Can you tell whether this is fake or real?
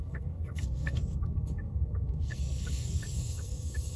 fake